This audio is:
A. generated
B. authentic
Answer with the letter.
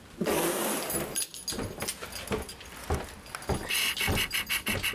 B